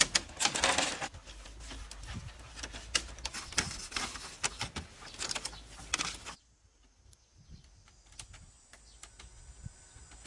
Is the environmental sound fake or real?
real